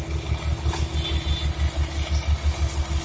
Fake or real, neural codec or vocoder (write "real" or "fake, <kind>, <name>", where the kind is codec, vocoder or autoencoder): real